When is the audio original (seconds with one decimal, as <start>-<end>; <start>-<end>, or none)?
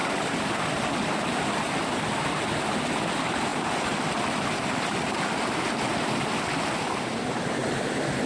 0.0-8.3